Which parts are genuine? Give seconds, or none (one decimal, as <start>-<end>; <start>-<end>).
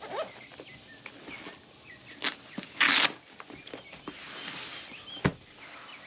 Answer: 0.0-6.1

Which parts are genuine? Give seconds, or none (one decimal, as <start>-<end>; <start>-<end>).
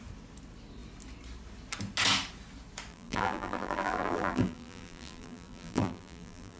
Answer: 0.0-2.9